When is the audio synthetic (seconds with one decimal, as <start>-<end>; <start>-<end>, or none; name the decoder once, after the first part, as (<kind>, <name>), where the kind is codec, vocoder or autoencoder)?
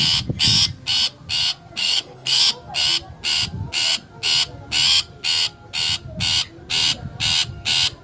1.8-2.4 (codec, SNAC)